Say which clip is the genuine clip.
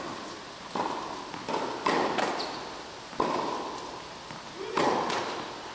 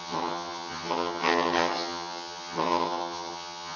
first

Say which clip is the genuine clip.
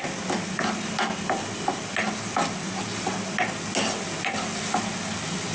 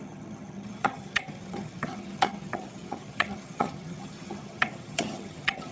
first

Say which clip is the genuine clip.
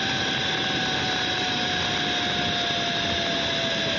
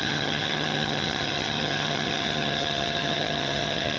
first